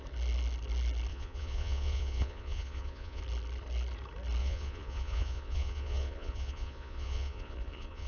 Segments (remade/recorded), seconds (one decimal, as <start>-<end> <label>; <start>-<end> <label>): 0.0-1.1 recorded; 1.1-3.2 remade; 3.2-4.4 recorded; 4.4-8.1 remade